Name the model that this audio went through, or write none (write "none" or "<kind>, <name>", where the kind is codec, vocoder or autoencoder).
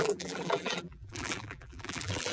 vocoder, BigVGAN v2